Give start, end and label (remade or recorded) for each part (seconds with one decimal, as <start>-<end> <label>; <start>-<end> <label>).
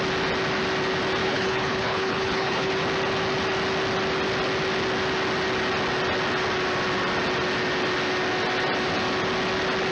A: 0.0-1.2 recorded; 1.2-2.7 remade; 2.7-9.9 recorded